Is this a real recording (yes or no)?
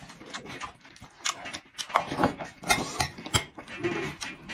yes